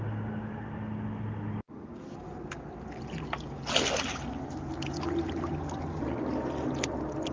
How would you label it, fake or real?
real